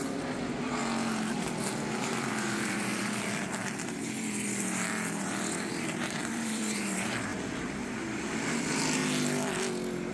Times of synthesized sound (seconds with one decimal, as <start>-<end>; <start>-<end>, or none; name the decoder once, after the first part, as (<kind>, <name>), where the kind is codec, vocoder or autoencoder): 0.0-0.8 (vocoder, BigVGAN v2); 1.9-9.0